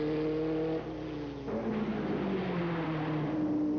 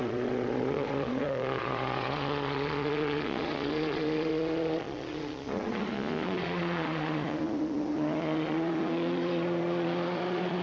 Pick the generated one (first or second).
second